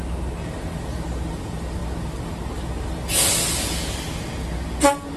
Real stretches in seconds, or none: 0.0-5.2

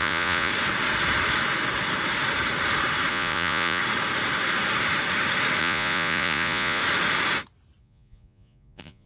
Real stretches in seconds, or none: 0.5-3.1; 3.8-5.6; 6.8-7.8

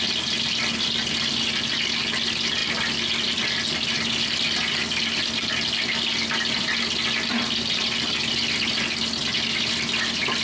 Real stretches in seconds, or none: 0.0-10.4

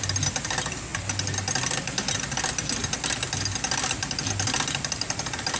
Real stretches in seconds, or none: 0.0-5.6

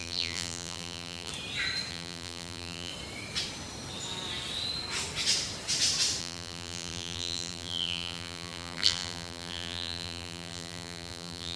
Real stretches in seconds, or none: 1.3-1.9; 2.9-6.2

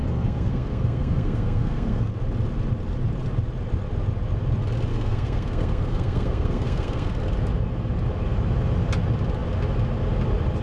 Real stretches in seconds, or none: 2.1-4.9; 7.2-10.6

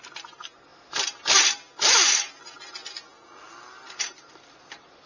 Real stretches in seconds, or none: 0.0-5.1

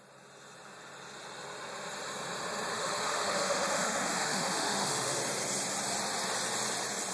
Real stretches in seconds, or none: 0.0-2.7; 5.2-7.1